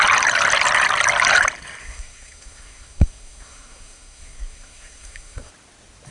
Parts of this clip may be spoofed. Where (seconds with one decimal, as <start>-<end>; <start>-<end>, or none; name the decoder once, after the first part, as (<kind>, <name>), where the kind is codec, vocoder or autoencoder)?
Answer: 1.8-5.5 (codec, SNAC)